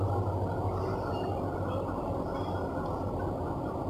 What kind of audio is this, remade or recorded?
recorded